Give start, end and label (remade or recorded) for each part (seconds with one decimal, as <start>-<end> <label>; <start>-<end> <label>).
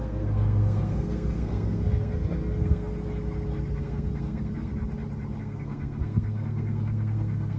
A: 0.0-2.9 remade; 2.9-3.8 recorded; 3.8-4.7 remade; 4.7-5.4 recorded; 5.4-7.6 remade